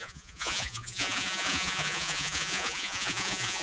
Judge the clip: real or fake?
fake